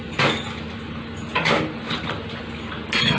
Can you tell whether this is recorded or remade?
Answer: recorded